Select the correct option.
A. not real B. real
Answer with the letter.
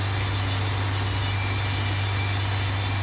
B